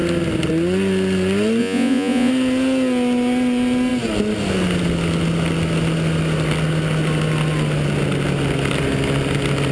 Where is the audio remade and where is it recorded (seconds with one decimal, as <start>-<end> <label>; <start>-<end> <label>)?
0.0-1.6 recorded; 1.6-2.3 remade; 2.3-9.7 recorded